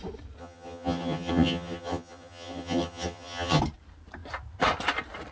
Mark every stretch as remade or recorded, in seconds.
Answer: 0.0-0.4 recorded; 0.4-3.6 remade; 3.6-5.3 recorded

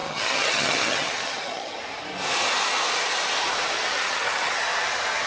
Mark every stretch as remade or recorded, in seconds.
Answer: 0.0-1.8 remade; 1.8-3.9 recorded; 3.9-4.5 remade; 4.5-5.3 recorded

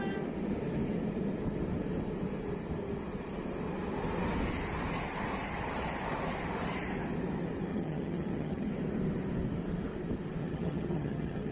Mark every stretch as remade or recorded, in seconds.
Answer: 0.0-7.7 recorded; 7.7-8.7 remade; 8.7-10.4 recorded; 10.4-11.5 remade

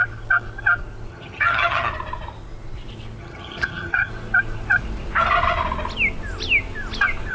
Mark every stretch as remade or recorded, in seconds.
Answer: 0.0-1.1 recorded; 1.1-1.9 remade; 1.9-3.2 recorded; 3.2-4.1 remade; 4.1-7.3 recorded

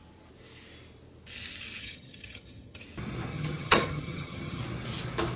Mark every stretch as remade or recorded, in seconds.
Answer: 0.0-1.8 recorded; 1.8-2.8 remade; 2.8-3.3 recorded; 3.3-4.6 remade; 4.6-5.4 recorded

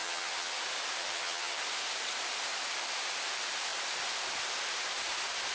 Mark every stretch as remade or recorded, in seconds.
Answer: 0.0-0.6 remade; 0.6-1.0 recorded; 1.0-1.6 remade; 1.6-5.5 recorded